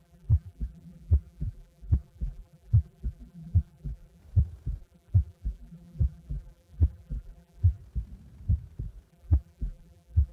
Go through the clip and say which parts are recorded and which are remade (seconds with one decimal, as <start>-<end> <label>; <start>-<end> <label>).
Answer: 0.0-4.2 remade; 4.2-4.8 recorded; 4.8-7.8 remade; 7.8-9.1 recorded; 9.1-10.3 remade